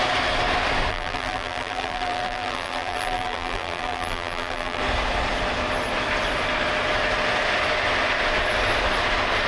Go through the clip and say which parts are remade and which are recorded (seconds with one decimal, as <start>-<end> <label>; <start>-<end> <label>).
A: 0.0-0.9 recorded; 0.9-4.8 remade; 4.8-9.5 recorded